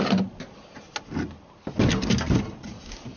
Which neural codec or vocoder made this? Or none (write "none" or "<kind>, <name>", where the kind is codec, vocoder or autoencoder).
none